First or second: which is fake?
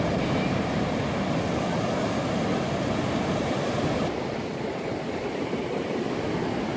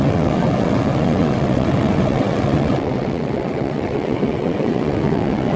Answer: second